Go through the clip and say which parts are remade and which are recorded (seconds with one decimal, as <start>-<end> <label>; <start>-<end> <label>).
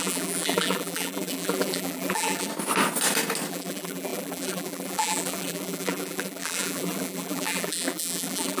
0.0-2.5 remade; 2.5-3.5 recorded; 3.5-8.6 remade